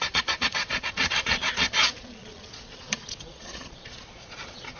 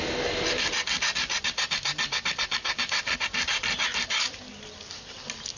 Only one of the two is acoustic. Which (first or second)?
second